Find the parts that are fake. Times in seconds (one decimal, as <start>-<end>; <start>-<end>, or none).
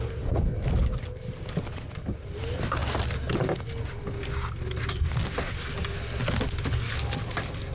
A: none